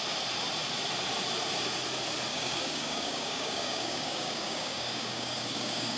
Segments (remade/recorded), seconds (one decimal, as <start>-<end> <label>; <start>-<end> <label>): 0.0-2.3 recorded; 2.3-6.0 remade